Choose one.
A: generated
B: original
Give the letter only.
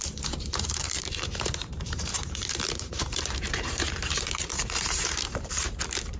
A